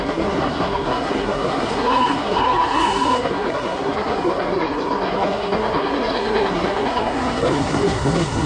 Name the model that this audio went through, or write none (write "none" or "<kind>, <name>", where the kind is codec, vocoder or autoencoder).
codec, SNAC